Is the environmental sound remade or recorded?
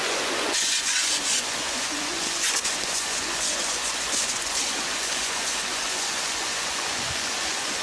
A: remade